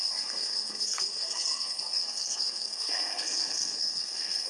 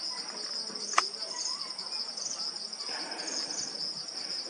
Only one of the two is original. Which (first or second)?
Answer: second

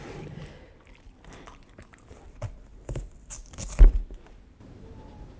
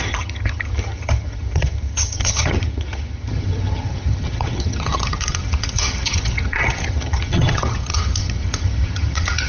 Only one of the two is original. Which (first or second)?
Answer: first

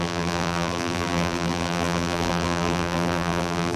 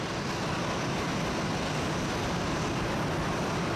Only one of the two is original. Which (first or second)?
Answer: second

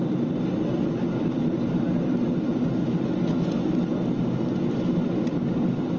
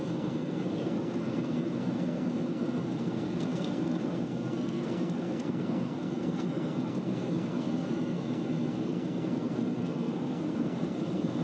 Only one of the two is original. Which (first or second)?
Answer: first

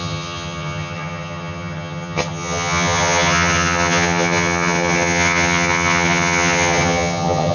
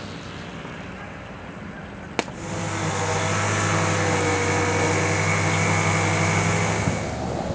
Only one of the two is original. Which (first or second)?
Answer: second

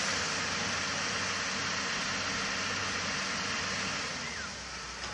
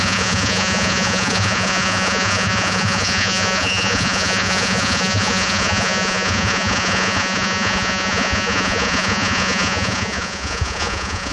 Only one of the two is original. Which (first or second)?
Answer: first